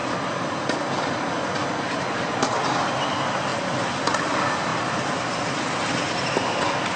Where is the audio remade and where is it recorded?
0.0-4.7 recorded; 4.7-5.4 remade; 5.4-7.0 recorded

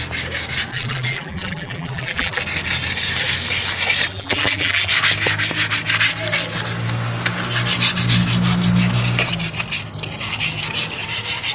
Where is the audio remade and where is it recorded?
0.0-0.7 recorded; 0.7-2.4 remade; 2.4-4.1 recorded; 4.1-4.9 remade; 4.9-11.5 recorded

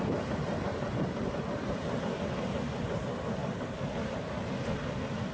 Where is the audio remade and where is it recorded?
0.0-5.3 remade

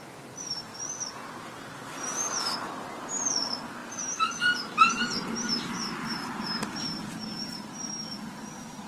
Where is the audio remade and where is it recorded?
0.0-2.1 recorded; 2.1-2.7 remade; 2.7-3.8 recorded; 3.8-7.9 remade; 7.9-8.9 recorded